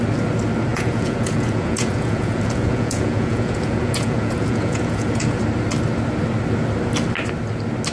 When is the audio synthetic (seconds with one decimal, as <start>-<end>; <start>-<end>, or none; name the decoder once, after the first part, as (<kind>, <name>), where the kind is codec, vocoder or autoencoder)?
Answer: 0.7-5.4 (vocoder, Vocos)